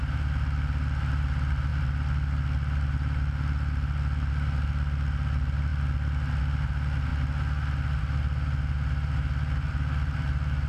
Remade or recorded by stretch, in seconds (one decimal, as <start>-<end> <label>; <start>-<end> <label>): 0.0-7.1 remade; 7.1-8.0 recorded; 8.0-10.7 remade